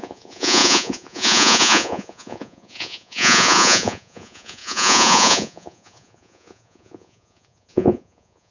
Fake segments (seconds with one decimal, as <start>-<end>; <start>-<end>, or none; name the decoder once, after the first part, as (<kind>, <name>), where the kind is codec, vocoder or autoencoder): 0.0-8.5 (vocoder, Vocos)